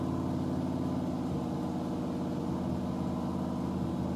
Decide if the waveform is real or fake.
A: real